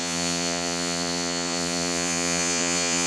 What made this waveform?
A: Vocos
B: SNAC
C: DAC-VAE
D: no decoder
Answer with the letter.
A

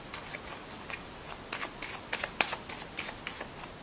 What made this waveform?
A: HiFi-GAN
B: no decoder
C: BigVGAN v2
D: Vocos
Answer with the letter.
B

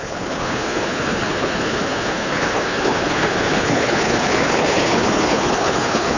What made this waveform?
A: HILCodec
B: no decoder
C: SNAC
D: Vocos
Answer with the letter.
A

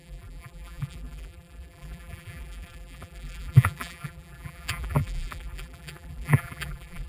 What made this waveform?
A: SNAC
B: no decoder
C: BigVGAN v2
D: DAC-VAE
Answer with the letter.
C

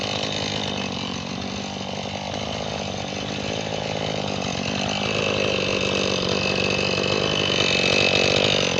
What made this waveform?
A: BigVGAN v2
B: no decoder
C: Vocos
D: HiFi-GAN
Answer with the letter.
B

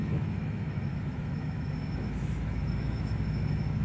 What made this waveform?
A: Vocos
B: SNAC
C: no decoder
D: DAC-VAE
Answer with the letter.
D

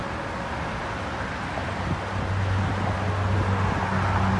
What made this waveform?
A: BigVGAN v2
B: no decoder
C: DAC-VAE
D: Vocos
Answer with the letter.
B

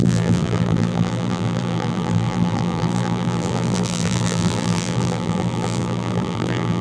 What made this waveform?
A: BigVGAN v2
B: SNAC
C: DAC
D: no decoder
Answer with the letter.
A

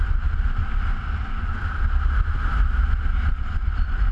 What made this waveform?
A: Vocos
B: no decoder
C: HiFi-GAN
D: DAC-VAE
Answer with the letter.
B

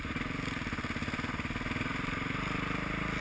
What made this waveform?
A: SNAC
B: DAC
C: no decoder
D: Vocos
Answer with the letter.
C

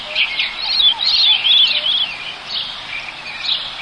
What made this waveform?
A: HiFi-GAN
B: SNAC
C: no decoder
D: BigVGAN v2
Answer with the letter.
C